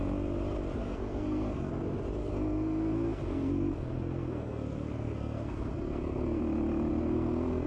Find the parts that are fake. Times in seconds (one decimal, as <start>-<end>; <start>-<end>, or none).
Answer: 0.8-1.7; 2.2-6.4; 6.9-7.7